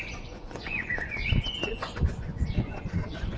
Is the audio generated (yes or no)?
yes